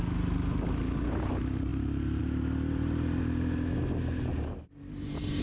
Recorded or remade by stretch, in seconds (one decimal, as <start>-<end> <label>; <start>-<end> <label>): 0.0-5.4 recorded